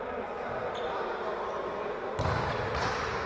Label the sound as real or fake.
real